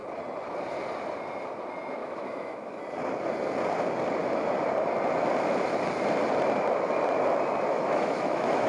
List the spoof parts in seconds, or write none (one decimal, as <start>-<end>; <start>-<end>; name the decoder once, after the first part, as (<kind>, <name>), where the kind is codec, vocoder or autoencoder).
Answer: 2.0-2.8 (autoencoder, DAC-VAE); 7.7-8.7